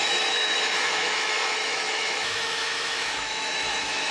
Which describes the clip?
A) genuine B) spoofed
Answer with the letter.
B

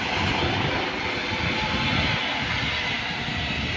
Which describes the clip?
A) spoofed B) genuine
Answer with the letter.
B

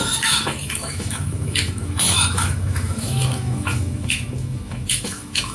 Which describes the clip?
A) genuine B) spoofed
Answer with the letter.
B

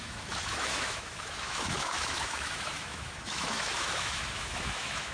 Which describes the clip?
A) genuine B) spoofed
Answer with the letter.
B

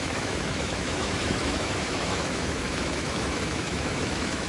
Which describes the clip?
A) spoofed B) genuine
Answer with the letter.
A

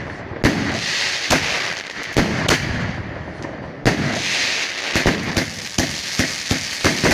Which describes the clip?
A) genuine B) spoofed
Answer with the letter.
A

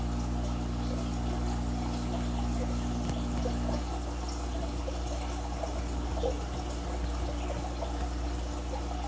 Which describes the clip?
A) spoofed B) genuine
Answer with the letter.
B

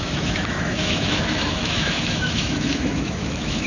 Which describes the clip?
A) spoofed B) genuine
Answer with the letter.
A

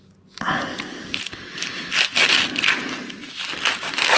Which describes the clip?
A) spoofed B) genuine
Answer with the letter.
B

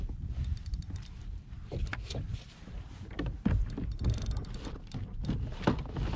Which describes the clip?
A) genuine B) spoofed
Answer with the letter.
A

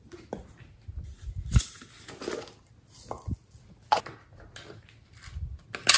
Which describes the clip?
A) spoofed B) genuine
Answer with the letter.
B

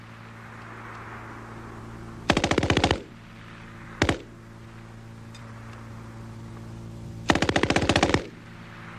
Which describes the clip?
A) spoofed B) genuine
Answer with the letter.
B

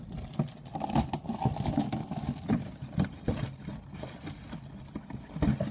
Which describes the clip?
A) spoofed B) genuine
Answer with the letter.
B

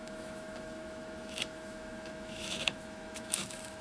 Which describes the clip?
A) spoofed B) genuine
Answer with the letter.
A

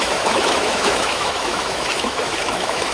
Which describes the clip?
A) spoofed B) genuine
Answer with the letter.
A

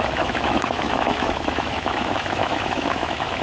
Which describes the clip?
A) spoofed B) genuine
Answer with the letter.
A